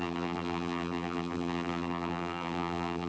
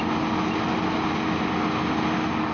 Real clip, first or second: second